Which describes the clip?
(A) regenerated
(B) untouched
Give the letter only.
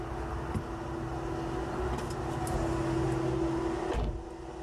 B